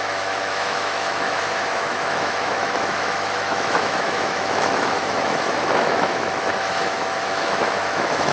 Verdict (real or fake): fake